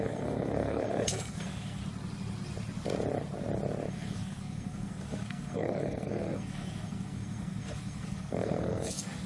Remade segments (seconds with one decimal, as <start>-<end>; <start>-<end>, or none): 0.0-1.8; 3.9-9.3